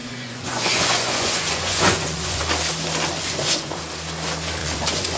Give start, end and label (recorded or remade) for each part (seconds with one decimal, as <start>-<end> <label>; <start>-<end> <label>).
0.0-2.4 remade; 2.4-3.1 recorded; 3.1-3.8 remade; 3.8-4.6 recorded; 4.6-5.2 remade